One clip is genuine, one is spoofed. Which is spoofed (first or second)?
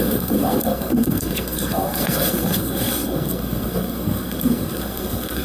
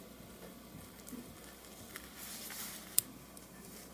first